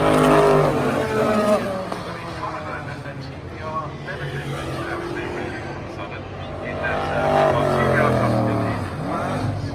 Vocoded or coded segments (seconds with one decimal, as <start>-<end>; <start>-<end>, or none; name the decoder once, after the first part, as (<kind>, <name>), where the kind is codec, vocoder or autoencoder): none